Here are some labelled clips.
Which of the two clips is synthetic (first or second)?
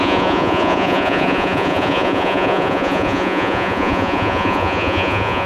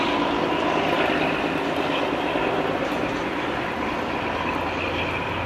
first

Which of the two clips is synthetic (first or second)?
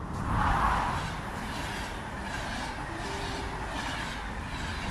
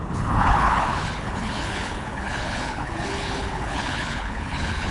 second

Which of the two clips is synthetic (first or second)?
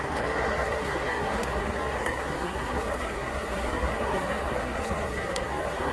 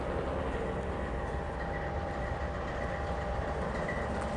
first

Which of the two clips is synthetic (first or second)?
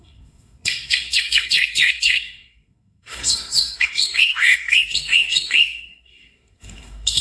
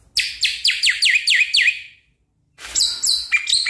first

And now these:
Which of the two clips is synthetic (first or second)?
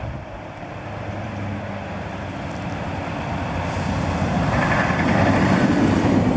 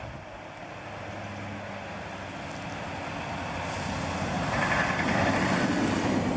first